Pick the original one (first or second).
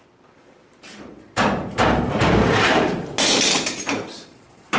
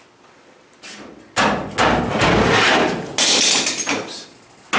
second